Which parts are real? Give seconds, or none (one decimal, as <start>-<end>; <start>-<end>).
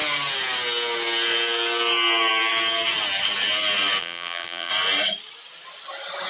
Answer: 0.0-4.0; 4.7-6.3